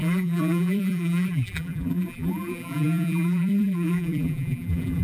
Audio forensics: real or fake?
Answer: fake